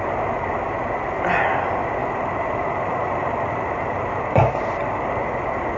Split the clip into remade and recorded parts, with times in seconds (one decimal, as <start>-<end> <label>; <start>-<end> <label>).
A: 0.0-2.0 recorded; 2.0-5.2 remade; 5.2-5.8 recorded